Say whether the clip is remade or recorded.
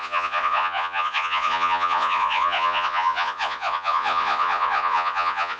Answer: remade